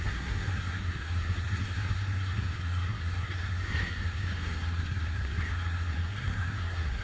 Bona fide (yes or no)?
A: no